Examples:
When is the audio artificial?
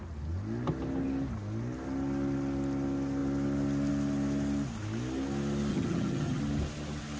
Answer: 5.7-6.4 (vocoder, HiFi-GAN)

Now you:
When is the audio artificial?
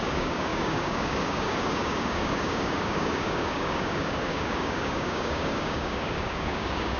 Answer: 0.0-7.0 (codec, DAC)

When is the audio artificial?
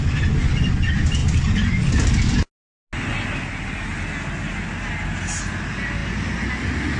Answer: none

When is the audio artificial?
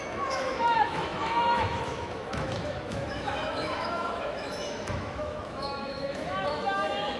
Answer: 0.0-7.2 (autoencoder, DAC-VAE)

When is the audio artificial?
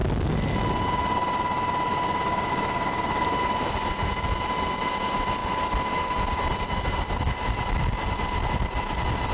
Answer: none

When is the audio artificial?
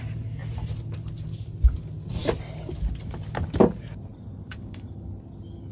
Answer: 4.1-5.1 (vocoder, BigVGAN v2)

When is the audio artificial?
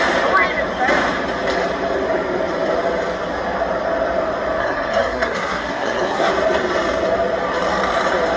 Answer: 4.6-6.3 (codec, SNAC)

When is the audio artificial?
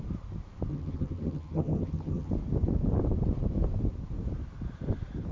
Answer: 0.7-2.3 (vocoder, HiFi-GAN)